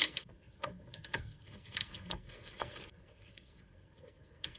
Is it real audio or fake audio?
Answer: fake